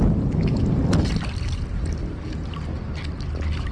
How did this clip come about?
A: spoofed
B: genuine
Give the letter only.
B